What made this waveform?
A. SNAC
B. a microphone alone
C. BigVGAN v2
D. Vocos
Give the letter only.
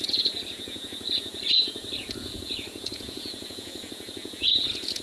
D